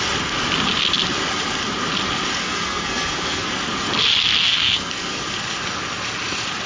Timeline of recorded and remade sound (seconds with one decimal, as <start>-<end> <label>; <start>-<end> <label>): 0.0-2.4 recorded; 2.4-3.5 remade; 3.5-4.4 recorded; 4.4-5.2 remade; 5.2-6.7 recorded